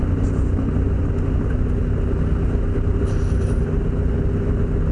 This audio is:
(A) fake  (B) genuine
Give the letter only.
B